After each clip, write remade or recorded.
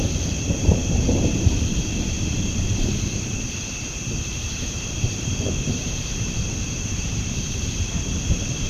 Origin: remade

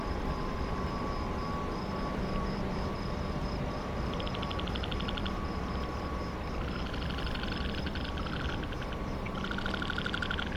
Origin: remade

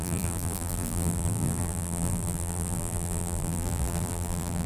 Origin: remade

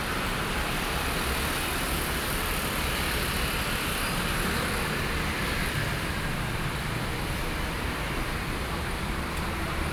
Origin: remade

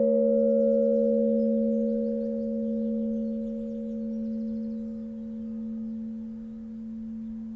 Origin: recorded